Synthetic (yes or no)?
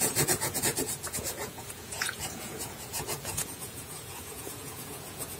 yes